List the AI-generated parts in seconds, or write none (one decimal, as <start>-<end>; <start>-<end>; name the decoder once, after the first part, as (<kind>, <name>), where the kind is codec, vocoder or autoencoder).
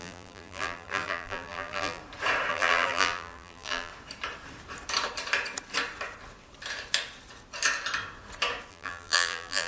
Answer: 0.0-2.0 (vocoder, BigVGAN v2); 2.5-3.9; 8.7-9.7